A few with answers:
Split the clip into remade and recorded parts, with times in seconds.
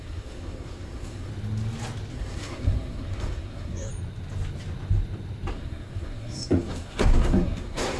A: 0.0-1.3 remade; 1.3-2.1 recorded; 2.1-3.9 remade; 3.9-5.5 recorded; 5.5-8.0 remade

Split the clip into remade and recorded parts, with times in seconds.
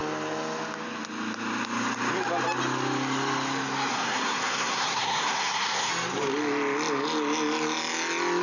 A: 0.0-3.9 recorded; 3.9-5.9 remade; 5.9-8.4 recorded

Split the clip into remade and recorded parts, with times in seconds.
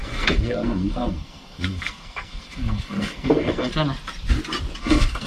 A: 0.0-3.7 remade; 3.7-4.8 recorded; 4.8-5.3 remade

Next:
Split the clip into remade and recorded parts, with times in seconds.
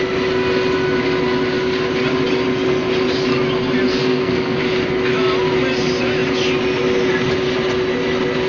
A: 0.0-3.9 recorded; 3.9-4.6 remade; 4.6-8.5 recorded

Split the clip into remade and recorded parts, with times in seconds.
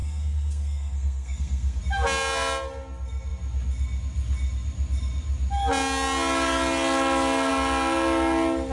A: 0.0-1.8 remade; 1.8-8.7 recorded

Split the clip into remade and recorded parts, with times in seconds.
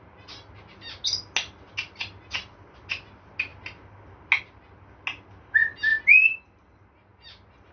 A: 0.0-7.7 recorded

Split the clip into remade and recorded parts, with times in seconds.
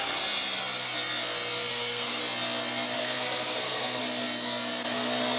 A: 0.0-1.7 recorded; 1.7-2.2 remade; 2.2-3.0 recorded; 3.0-4.0 remade; 4.0-5.4 recorded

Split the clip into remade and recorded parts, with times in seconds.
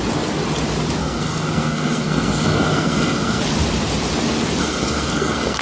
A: 0.0-1.0 recorded; 1.0-3.4 remade; 3.4-4.6 recorded; 4.6-5.6 remade